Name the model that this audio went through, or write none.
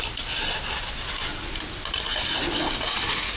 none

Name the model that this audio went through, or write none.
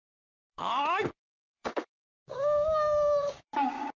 codec, DAC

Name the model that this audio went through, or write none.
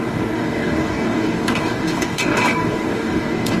codec, DAC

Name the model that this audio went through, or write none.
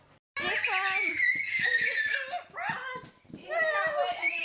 none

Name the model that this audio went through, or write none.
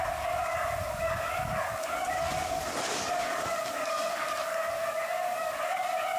codec, DAC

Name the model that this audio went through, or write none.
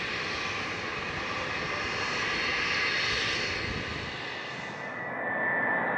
none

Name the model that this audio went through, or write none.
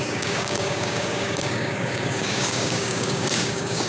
codec, DAC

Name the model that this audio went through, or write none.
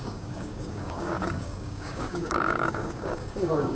codec, DAC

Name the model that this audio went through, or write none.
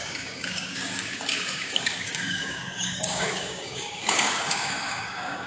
codec, DAC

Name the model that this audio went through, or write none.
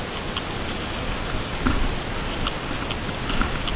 none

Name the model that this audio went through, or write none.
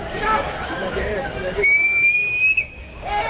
codec, DAC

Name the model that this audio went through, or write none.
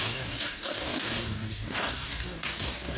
codec, DAC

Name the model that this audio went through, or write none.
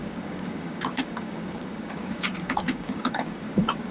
codec, DAC